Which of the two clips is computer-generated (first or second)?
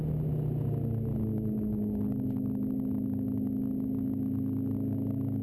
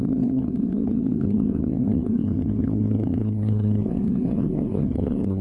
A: second